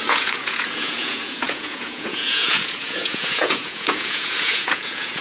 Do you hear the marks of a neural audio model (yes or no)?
yes